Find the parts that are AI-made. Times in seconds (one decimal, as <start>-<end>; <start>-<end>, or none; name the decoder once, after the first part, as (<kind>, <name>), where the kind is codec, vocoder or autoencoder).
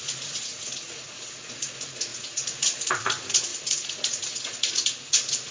0.0-5.5 (vocoder, Vocos)